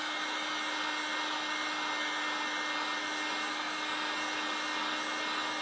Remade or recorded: recorded